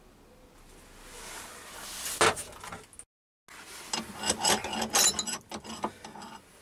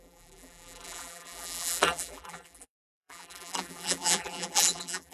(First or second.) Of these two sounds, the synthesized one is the second